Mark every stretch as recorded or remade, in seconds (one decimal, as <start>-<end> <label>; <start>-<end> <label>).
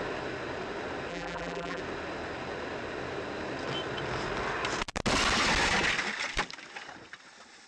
0.0-1.1 recorded; 1.1-1.8 remade; 1.8-7.7 recorded